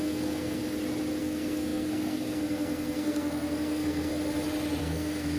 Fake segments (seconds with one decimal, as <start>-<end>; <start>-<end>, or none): 0.0-0.6; 1.2-4.1; 4.8-5.4